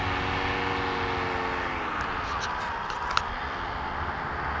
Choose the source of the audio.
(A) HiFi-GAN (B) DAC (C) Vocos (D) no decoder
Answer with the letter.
D